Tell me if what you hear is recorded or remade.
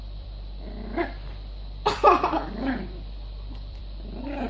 remade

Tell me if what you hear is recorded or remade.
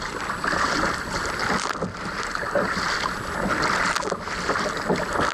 recorded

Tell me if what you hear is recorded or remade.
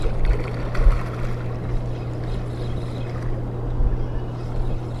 recorded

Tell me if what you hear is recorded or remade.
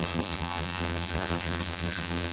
remade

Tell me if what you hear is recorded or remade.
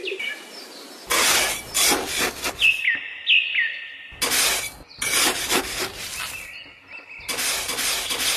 recorded